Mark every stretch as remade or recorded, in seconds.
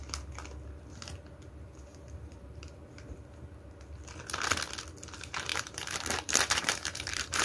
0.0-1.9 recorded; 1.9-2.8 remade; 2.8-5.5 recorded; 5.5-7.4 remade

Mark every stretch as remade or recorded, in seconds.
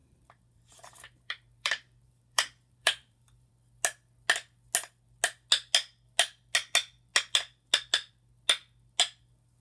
0.0-3.5 remade; 3.5-9.6 recorded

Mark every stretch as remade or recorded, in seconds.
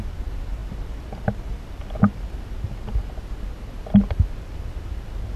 0.0-5.4 recorded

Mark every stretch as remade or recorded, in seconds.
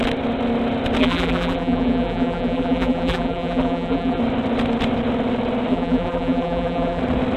0.0-1.0 recorded; 1.0-4.2 remade; 4.2-5.7 recorded; 5.7-7.0 remade; 7.0-7.4 recorded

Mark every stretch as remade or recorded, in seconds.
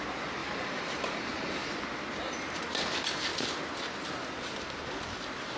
0.0-0.4 recorded; 0.4-1.6 remade; 1.6-5.6 recorded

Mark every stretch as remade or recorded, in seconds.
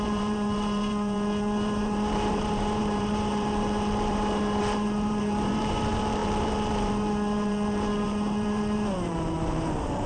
0.0-10.1 remade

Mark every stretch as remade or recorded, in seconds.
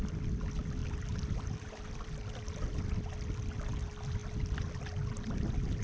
0.0-0.8 recorded; 0.8-2.6 remade; 2.6-4.2 recorded; 4.2-4.8 remade; 4.8-5.8 recorded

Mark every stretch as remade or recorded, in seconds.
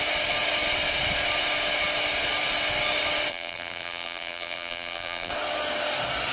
0.0-3.3 recorded; 3.3-5.3 remade; 5.3-6.3 recorded